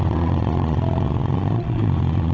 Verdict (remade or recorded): remade